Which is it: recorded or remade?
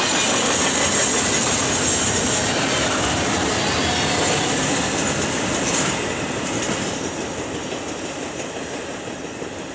recorded